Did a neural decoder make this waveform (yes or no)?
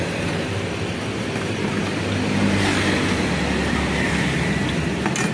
no